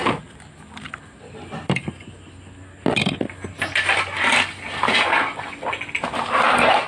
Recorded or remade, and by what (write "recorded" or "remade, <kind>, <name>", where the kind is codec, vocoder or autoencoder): recorded